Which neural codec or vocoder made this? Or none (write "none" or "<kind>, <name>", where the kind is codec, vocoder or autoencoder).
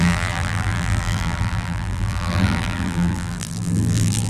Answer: vocoder, BigVGAN v2